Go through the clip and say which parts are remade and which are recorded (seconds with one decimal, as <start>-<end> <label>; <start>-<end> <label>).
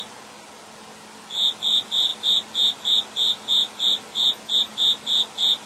0.0-5.7 recorded